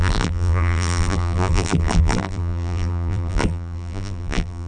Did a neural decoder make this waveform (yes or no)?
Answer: yes